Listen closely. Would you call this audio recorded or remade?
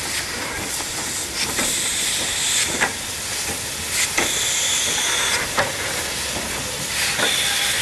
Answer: recorded